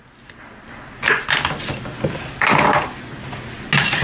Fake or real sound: real